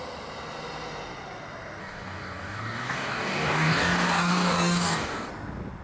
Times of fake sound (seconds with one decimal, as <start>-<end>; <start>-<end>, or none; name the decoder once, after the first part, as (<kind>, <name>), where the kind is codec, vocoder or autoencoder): 1.8-5.3 (codec, DAC)